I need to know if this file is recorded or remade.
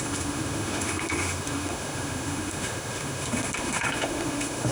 remade